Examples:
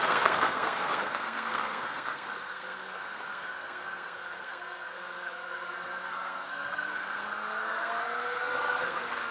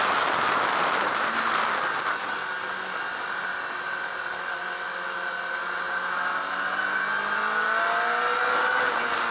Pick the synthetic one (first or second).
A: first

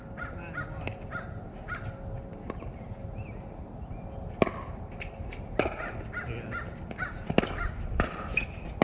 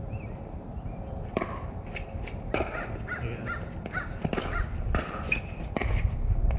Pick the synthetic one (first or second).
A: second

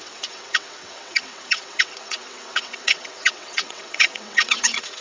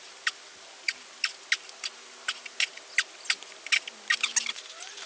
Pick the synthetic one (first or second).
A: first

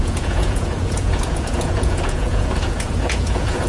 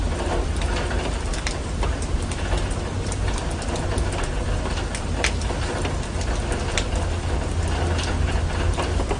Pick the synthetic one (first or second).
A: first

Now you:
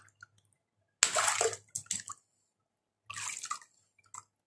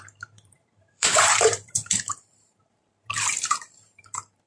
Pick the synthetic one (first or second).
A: second